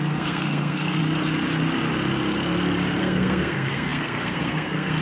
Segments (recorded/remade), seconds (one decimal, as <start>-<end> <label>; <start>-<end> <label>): 0.0-1.0 remade; 1.0-3.0 recorded; 3.0-5.0 remade